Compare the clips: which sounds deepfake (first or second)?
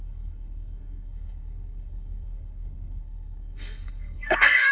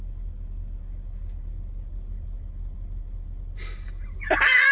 first